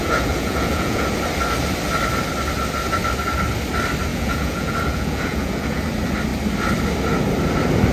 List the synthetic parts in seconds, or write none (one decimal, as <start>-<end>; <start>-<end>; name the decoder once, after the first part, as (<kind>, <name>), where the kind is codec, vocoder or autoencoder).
0.0-1.1 (vocoder, Vocos); 4.1-5.8